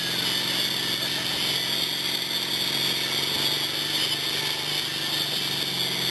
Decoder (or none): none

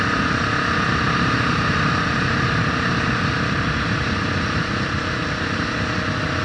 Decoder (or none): none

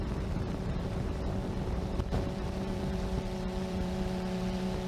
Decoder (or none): vocoder, BigVGAN v2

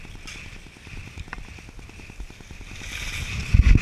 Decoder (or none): none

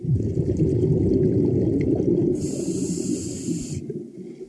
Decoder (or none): none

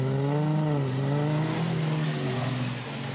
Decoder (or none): none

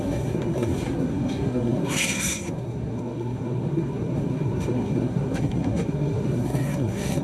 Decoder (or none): codec, SNAC